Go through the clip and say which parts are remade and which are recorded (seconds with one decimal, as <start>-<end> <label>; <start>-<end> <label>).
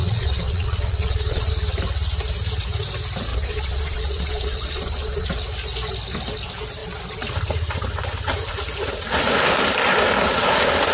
0.0-1.5 remade; 1.5-3.3 recorded; 3.3-5.3 remade; 5.3-10.9 recorded